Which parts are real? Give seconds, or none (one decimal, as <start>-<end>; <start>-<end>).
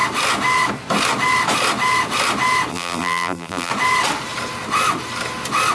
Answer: 0.0-2.7; 3.7-5.7